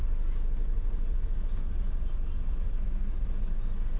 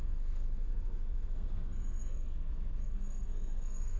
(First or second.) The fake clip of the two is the second